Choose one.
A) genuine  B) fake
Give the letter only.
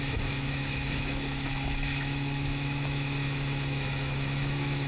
B